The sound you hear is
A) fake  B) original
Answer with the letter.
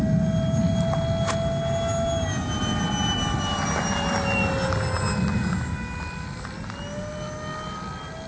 B